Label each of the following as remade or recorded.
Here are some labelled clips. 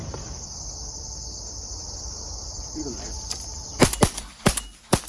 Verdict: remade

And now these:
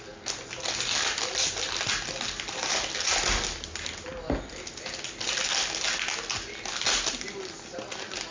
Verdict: recorded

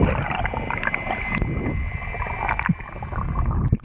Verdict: recorded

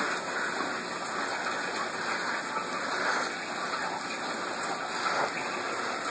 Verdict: recorded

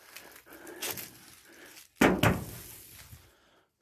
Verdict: recorded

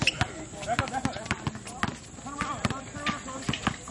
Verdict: recorded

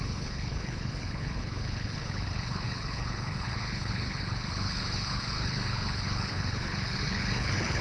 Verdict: remade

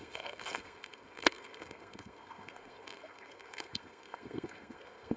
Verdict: remade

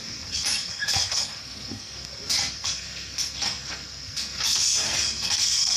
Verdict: remade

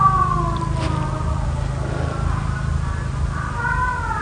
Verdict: recorded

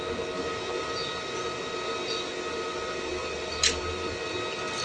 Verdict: recorded